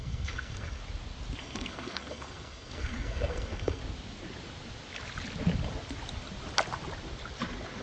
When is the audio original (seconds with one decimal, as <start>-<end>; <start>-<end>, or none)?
0.8-1.4; 3.8-7.8